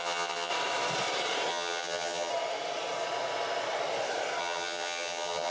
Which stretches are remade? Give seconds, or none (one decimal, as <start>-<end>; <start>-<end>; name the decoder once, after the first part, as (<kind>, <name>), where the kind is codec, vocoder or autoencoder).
0.0-0.5 (vocoder, HiFi-GAN); 1.5-2.3; 4.4-5.5